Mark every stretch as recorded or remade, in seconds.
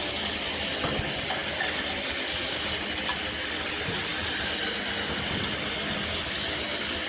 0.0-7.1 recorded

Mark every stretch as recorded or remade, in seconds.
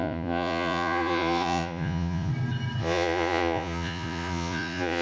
0.0-2.3 remade; 2.3-2.8 recorded; 2.8-5.0 remade